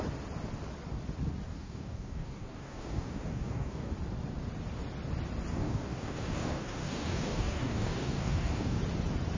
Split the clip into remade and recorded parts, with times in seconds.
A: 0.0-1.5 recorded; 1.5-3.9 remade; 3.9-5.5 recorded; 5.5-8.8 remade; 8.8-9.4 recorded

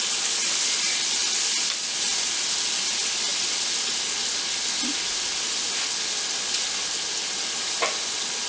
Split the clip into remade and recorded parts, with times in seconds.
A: 0.0-3.3 recorded; 3.3-3.9 remade; 3.9-8.5 recorded

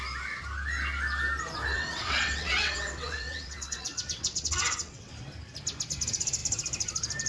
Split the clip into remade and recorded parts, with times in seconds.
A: 0.0-1.7 recorded; 1.7-5.1 remade; 5.1-7.3 recorded

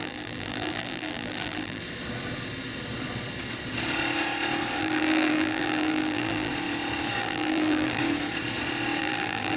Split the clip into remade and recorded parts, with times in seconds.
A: 0.0-1.8 remade; 1.8-4.8 recorded; 4.8-6.5 remade; 6.5-7.2 recorded; 7.2-8.0 remade; 8.0-9.0 recorded; 9.0-9.6 remade

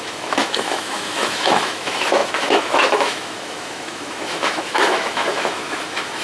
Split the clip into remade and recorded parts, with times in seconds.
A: 0.0-6.2 remade

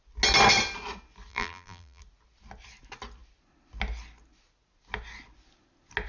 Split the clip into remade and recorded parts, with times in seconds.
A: 0.0-1.3 recorded; 1.3-2.0 remade; 2.0-6.1 recorded

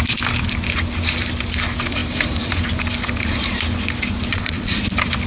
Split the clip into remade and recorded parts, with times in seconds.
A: 0.0-4.3 recorded; 4.3-4.8 remade; 4.8-5.3 recorded